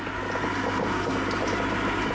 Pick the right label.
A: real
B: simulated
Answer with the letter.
A